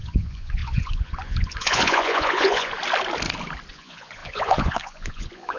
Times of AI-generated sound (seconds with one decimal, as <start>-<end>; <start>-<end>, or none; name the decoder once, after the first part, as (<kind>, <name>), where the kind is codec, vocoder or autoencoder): 0.0-2.7 (vocoder, Vocos); 3.7-5.6